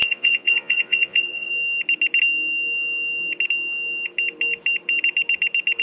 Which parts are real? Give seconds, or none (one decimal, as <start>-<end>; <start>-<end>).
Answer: 1.5-5.8